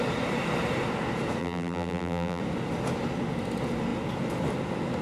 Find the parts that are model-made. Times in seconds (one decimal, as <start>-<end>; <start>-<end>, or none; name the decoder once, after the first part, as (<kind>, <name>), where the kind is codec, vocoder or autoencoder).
1.4-2.4 (vocoder, BigVGAN v2)